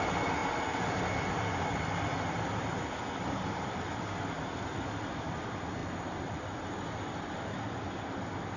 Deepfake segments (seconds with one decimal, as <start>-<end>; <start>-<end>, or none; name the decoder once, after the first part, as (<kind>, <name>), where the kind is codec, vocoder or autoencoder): none